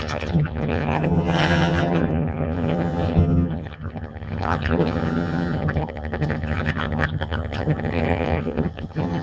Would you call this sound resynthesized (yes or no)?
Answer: yes